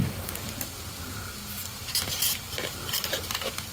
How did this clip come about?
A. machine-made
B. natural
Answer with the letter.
B